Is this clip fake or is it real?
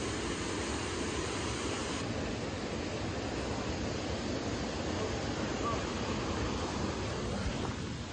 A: real